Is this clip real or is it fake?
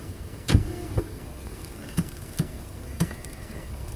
fake